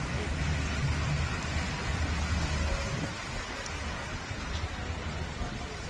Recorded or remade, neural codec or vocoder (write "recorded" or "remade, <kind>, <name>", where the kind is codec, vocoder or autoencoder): recorded